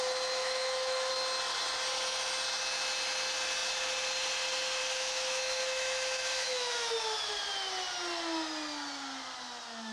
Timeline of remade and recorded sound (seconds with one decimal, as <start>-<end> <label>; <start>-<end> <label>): 0.0-0.4 recorded; 0.4-1.1 remade; 1.1-4.8 recorded; 4.8-6.9 remade; 6.9-9.9 recorded